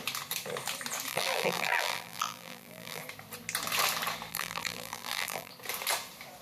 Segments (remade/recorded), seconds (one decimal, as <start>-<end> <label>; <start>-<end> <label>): 0.0-1.1 recorded; 1.1-3.0 remade; 3.0-4.3 recorded; 4.3-5.5 remade; 5.5-6.4 recorded